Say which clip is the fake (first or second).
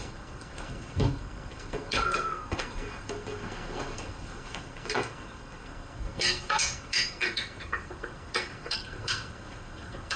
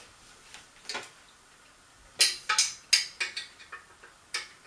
first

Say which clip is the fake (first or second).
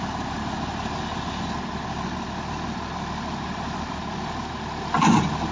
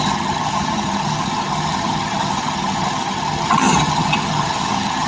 second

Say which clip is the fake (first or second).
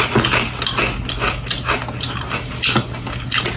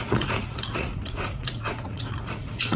second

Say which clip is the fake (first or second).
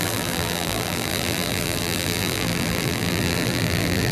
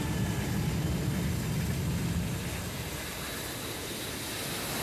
first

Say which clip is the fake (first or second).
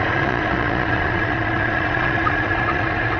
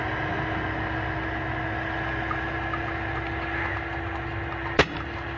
first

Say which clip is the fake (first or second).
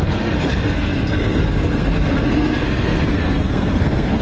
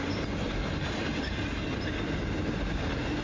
first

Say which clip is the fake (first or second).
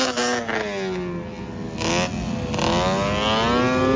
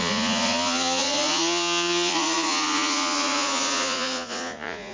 second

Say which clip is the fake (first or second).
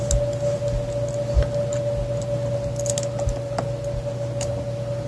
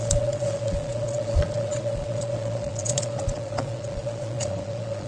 second